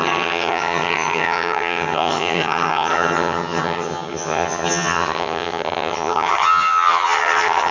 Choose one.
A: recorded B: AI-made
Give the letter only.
B